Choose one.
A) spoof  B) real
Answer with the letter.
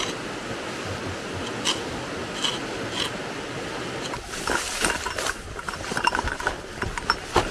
B